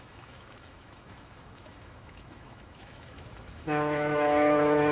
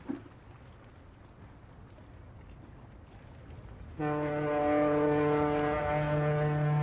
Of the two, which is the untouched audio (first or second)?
second